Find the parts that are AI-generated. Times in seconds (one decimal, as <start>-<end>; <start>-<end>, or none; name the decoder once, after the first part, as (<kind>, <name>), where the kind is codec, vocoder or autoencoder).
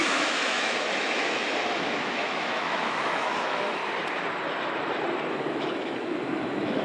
0.0-3.8 (autoencoder, DAC-VAE); 5.3-6.8